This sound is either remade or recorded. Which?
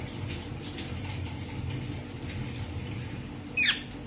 recorded